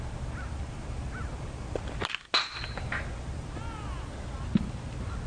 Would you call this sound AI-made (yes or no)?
no